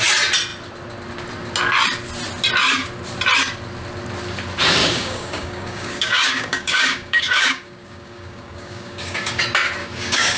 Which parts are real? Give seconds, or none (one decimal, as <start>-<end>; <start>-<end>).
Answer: 0.0-4.8; 9.4-9.8